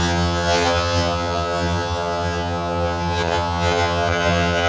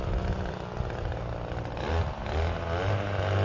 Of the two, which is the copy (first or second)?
first